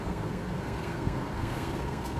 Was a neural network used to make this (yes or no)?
yes